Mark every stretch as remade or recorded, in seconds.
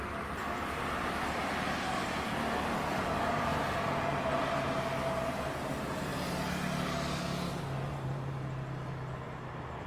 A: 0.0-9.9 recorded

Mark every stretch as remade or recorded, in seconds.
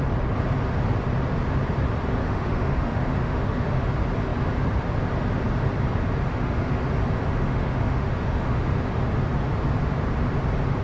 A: 0.0-2.2 recorded; 2.2-3.9 remade; 3.9-6.3 recorded; 6.3-6.8 remade; 6.8-7.3 recorded; 7.3-8.8 remade; 8.8-10.8 recorded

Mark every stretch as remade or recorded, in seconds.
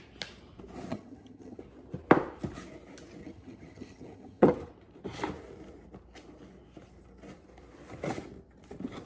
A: 0.0-0.9 recorded; 0.9-1.6 remade; 1.6-3.2 recorded; 3.2-4.5 remade; 4.5-9.1 recorded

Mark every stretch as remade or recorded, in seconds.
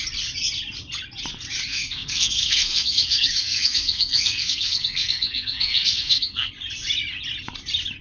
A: 0.0-1.7 recorded; 1.7-6.5 remade; 6.5-8.0 recorded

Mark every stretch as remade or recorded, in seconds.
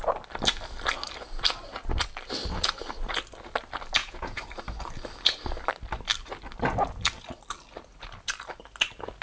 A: 0.0-4.0 recorded; 4.0-4.5 remade; 4.5-9.2 recorded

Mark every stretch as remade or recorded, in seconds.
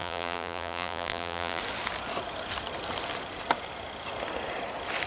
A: 0.0-1.6 remade; 1.6-5.1 recorded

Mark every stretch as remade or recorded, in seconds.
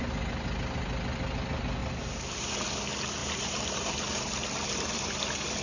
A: 0.0-1.8 recorded; 1.8-2.5 remade; 2.5-3.2 recorded; 3.2-4.0 remade; 4.0-5.6 recorded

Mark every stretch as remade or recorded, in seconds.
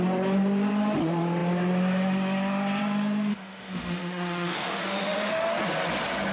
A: 0.0-3.3 recorded; 3.3-5.5 remade; 5.5-6.3 recorded